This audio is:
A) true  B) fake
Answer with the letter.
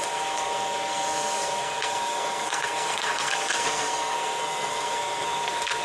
B